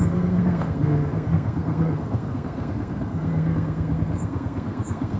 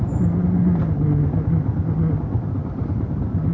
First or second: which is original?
second